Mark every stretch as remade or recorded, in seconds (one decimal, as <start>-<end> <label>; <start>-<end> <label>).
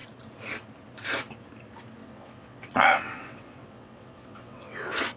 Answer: 0.0-2.0 recorded; 2.0-5.2 remade